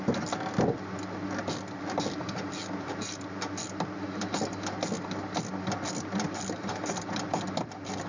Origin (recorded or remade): recorded